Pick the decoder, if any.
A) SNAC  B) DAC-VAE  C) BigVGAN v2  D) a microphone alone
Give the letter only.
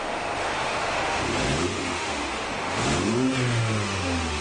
B